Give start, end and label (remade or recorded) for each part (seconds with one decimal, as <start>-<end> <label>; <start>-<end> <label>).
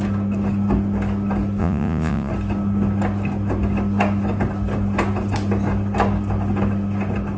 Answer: 0.0-1.6 recorded; 1.6-2.3 remade; 2.3-7.4 recorded